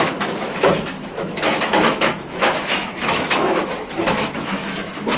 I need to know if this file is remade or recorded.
remade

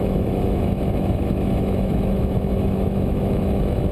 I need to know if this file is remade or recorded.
remade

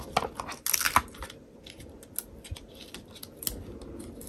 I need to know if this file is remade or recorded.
recorded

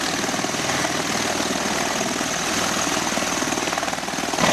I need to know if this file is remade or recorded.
recorded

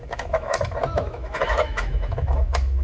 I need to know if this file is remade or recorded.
remade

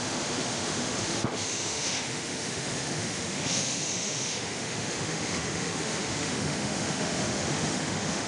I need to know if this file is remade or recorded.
remade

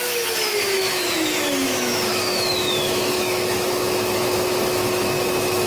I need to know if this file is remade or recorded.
remade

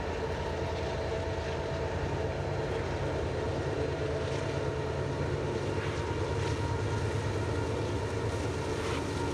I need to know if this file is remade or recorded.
recorded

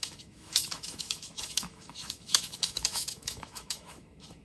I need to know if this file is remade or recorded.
remade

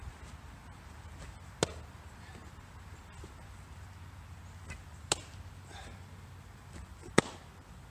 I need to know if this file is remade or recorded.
recorded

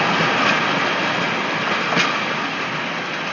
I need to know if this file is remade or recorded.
recorded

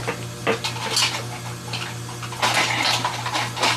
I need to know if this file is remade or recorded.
recorded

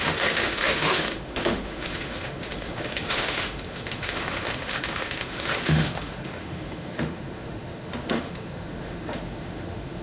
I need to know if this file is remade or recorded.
remade